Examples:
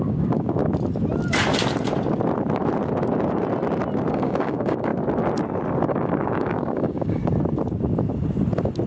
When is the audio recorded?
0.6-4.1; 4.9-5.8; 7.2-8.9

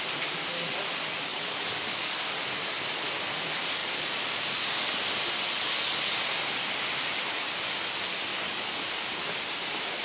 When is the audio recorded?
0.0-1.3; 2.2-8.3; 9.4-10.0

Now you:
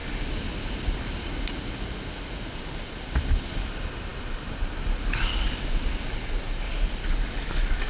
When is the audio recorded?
0.0-7.0

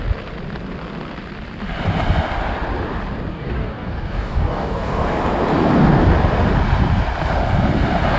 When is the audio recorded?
0.0-3.3; 5.2-8.2